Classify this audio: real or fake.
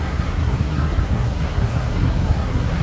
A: fake